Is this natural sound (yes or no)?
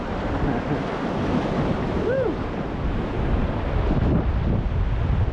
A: yes